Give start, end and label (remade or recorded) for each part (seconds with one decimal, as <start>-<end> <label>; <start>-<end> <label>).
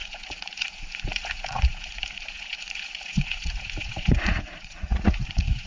0.0-5.7 remade